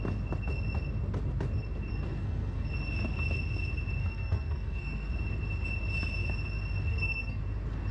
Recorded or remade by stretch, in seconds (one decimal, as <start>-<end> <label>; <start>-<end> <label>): 0.0-1.9 recorded; 1.9-2.7 remade; 2.7-4.0 recorded; 4.0-5.1 remade; 5.1-6.9 recorded; 6.9-7.4 remade; 7.4-7.9 recorded